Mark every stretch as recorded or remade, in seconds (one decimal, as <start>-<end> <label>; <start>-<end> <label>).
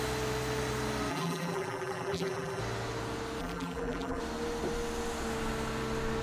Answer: 0.0-1.1 recorded; 1.1-2.6 remade; 2.6-3.4 recorded; 3.4-4.2 remade; 4.2-6.2 recorded